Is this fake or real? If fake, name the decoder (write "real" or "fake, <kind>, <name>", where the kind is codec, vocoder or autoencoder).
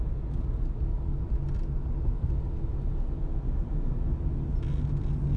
real